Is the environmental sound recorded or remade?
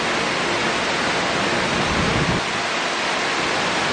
recorded